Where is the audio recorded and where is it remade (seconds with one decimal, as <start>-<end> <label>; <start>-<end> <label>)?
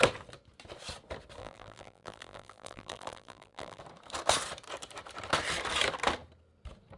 0.0-1.4 recorded; 1.4-3.8 remade; 3.8-7.0 recorded